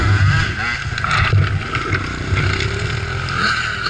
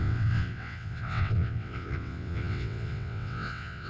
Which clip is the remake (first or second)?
second